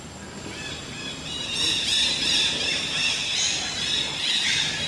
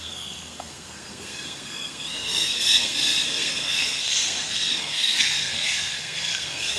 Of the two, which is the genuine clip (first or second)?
first